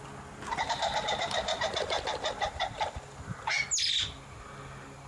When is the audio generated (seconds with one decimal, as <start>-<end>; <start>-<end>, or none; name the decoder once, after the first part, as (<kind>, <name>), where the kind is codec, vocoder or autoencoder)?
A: 0.5-3.6 (vocoder, BigVGAN v2)